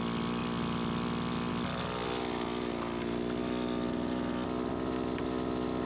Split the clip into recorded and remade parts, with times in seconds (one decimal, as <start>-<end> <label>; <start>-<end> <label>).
0.0-5.9 recorded

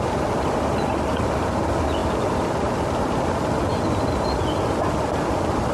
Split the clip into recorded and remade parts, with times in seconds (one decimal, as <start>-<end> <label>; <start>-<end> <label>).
0.0-5.7 recorded

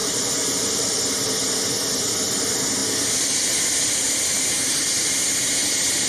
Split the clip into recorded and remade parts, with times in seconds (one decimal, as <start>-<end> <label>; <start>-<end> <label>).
0.0-1.0 remade; 1.0-6.1 recorded